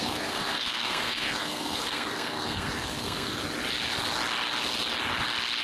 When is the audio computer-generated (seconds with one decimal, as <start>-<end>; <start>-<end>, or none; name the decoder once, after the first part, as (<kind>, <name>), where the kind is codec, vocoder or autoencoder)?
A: 0.0-3.4 (codec, SNAC)